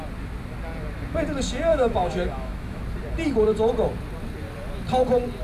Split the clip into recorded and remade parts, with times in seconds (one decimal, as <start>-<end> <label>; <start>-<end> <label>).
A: 0.0-1.7 recorded; 1.7-2.8 remade; 2.8-5.4 recorded